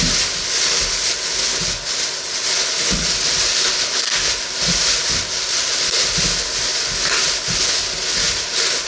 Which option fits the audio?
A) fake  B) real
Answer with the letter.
B